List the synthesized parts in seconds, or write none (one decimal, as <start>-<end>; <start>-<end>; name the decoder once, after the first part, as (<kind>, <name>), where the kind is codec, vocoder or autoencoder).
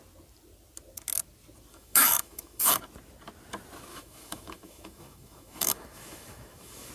1.7-2.8 (autoencoder, DAC-VAE); 3.9-6.9